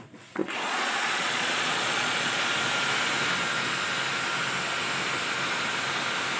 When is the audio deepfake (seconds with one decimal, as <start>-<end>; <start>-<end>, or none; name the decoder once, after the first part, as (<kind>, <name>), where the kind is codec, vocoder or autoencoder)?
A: 0.0-2.5 (vocoder, Vocos)